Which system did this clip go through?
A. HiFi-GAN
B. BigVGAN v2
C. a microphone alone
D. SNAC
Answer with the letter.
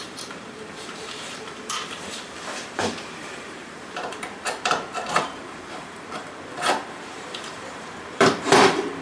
B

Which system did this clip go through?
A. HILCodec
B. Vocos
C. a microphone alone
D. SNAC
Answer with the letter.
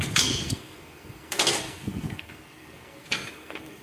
D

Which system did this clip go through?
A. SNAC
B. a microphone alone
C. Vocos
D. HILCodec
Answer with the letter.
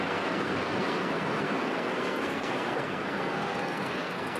A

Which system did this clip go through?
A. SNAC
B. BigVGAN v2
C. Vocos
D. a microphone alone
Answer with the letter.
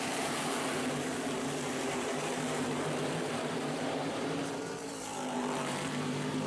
B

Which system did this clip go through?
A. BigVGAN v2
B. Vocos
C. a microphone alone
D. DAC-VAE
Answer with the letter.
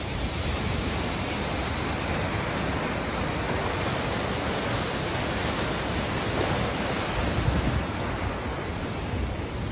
C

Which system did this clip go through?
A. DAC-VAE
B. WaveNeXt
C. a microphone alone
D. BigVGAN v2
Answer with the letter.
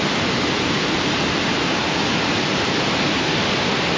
C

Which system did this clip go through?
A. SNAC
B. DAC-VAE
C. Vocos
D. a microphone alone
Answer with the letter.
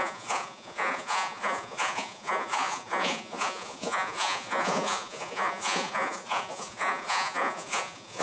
C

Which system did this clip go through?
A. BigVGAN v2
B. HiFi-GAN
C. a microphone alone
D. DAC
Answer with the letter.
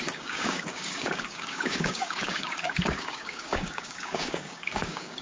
D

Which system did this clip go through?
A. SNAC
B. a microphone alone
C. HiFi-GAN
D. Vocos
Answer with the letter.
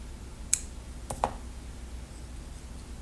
B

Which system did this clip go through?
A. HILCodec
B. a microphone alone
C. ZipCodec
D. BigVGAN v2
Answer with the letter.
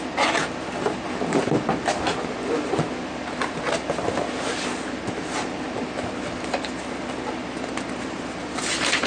B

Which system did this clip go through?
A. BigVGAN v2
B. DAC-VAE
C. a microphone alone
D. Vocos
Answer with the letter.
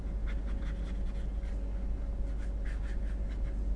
C